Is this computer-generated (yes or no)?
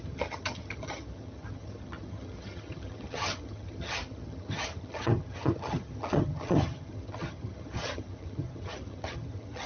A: yes